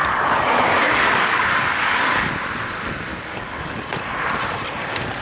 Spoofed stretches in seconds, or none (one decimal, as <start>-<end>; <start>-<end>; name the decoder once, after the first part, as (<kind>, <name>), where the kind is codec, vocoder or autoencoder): 0.0-2.3 (codec, DAC); 3.1-3.8